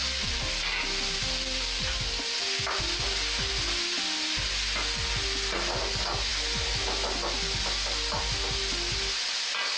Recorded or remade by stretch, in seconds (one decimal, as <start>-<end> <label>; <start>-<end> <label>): 0.0-9.8 recorded